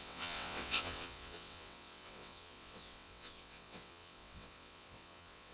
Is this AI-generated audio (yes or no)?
yes